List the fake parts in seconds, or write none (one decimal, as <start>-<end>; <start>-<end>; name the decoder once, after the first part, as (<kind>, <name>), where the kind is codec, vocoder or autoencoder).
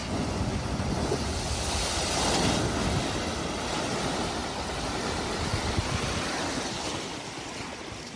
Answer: 0.0-1.5 (vocoder, Vocos)